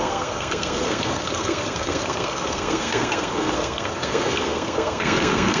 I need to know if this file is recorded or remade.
remade